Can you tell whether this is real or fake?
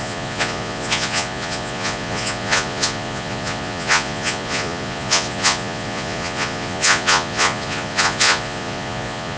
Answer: fake